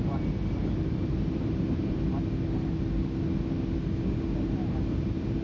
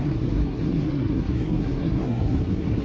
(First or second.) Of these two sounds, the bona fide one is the first